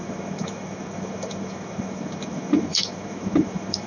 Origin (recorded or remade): remade